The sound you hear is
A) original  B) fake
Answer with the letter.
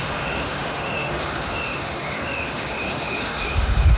B